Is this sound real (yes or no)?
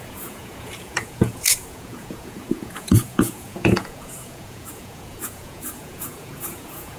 no